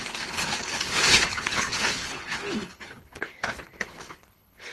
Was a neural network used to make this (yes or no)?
yes